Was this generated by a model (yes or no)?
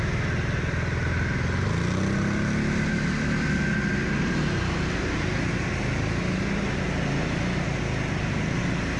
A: no